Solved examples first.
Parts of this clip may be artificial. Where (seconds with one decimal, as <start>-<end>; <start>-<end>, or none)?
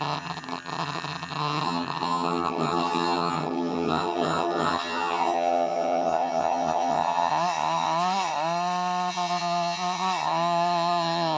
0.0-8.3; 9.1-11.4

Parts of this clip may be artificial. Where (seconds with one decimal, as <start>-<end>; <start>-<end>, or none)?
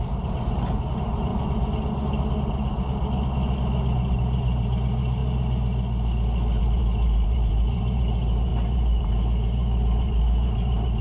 0.0-1.3; 4.1-5.2; 6.6-11.0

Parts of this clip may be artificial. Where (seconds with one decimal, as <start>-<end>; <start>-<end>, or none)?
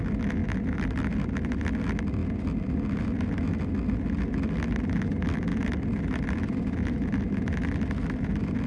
none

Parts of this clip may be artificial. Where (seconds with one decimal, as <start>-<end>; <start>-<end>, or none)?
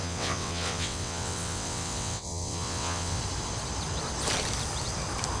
0.0-3.2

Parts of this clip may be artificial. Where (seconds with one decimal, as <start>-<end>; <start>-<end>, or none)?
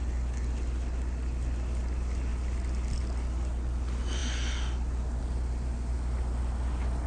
none